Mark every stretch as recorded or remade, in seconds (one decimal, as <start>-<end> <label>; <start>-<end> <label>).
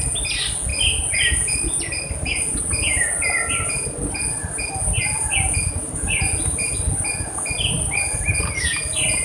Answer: 0.0-9.2 recorded